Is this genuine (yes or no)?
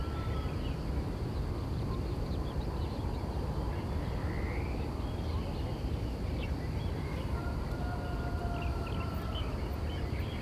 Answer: yes